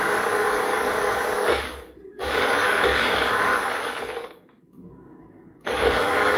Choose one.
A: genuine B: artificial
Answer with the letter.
B